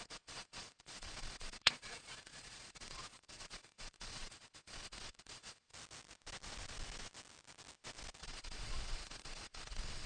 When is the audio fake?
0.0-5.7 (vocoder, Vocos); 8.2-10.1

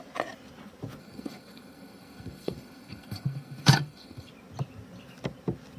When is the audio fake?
1.0-4.3 (codec, SNAC)